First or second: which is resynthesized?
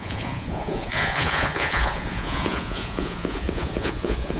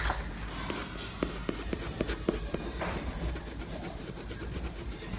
first